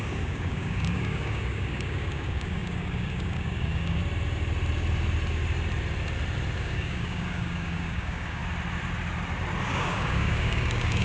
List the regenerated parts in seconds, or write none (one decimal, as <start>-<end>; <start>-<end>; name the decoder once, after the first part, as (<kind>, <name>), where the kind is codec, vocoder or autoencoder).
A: 0.0-4.0 (codec, DAC); 6.6-8.4; 9.6-11.0